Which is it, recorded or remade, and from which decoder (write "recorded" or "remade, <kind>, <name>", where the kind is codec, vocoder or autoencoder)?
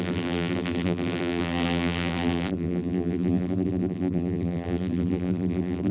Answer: remade, vocoder, BigVGAN v2